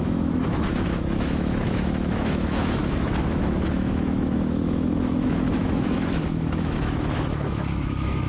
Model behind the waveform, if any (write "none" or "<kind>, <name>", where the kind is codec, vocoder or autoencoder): autoencoder, DAC-VAE